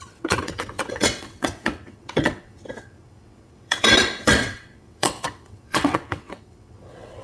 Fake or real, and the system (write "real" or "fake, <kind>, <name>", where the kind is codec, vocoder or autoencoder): fake, vocoder, WaveNeXt